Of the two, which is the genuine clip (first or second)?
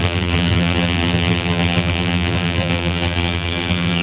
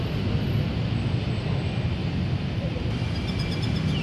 second